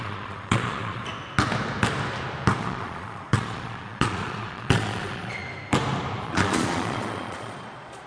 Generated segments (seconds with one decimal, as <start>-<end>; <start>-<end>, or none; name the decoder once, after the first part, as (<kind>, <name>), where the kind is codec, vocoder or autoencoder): 0.0-1.0 (vocoder, Vocos); 2.6-5.4; 6.2-8.1